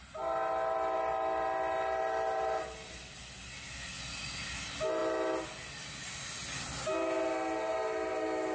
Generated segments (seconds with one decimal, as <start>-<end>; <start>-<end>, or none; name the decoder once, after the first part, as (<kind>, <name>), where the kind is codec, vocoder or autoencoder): none